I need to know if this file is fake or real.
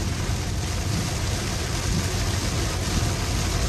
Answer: real